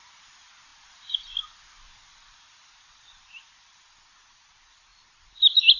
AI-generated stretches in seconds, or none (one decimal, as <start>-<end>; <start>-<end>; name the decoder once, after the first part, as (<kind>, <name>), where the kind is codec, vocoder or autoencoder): none